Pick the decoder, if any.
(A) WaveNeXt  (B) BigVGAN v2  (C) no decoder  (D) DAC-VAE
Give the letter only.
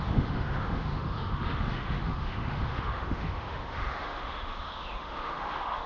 D